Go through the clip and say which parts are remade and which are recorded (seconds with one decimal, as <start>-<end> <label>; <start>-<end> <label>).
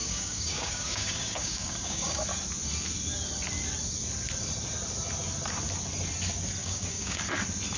0.0-2.2 remade; 2.2-6.6 recorded; 6.6-7.2 remade; 7.2-7.8 recorded